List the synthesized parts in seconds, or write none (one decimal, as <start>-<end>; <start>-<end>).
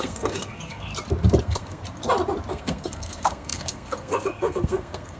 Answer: 0.0-0.9; 1.4-1.8; 2.5-5.2